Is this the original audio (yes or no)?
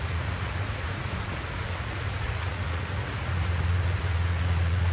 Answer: no